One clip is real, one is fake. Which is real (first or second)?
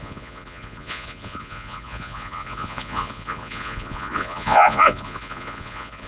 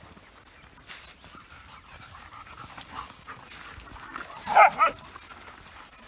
second